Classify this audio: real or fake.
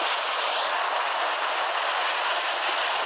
real